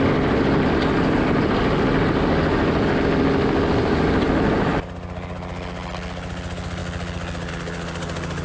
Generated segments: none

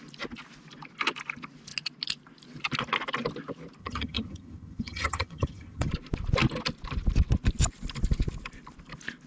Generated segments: 3.8-5.9 (vocoder, HiFi-GAN)

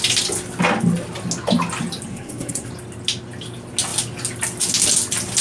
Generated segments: 2.1-2.7 (codec, SNAC)

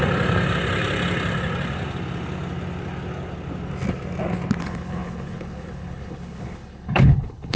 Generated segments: 4.6-7.6 (codec, HILCodec)

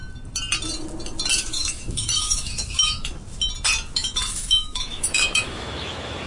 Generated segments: 1.3-3.1 (autoencoder, DAC-VAE); 4.0-6.3

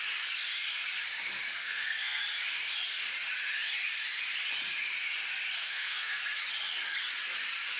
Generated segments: 1.6-2.2 (codec, SNAC); 5.6-6.2

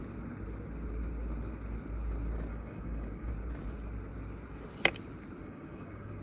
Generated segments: 2.5-3.3 (codec, DAC); 5.4-6.2

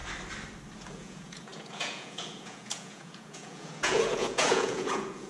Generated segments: 0.9-5.3 (vocoder, Vocos)